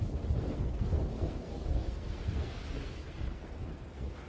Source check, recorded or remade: remade